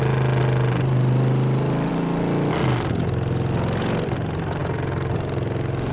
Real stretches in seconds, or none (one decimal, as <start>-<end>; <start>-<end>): 0.0-5.9